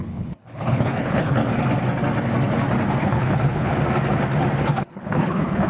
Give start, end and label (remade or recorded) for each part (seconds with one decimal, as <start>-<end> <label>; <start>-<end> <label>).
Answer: 0.0-1.4 remade; 1.4-3.0 recorded; 3.0-3.7 remade; 3.7-4.6 recorded; 4.6-5.7 remade